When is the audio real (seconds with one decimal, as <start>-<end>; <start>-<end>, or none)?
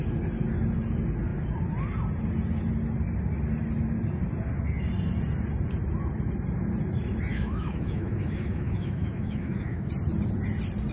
0.0-7.3; 9.9-10.9